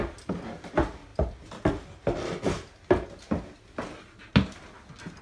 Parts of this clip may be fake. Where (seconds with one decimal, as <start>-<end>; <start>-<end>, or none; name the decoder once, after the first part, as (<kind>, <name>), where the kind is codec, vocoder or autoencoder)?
none